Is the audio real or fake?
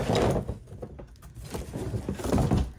real